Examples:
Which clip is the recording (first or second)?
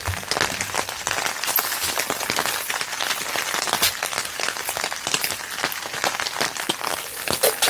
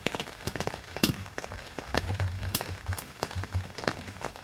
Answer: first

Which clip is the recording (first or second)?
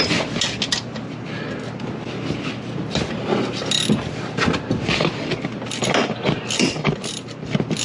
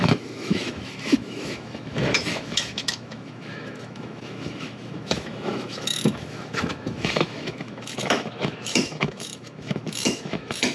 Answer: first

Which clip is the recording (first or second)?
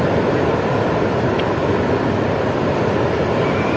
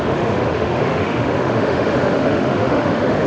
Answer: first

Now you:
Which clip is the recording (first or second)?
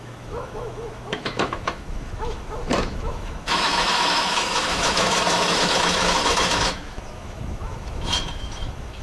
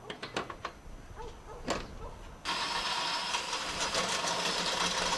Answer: second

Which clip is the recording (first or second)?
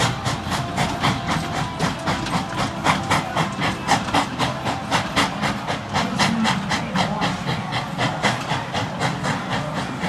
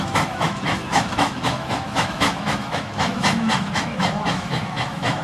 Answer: first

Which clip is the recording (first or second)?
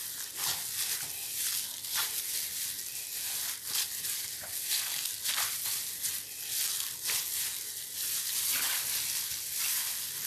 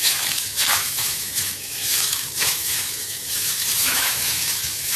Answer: first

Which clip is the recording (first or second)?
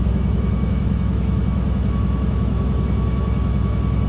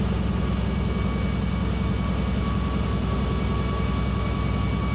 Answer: second